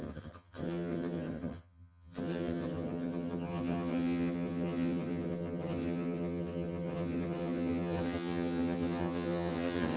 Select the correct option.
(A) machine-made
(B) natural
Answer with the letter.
A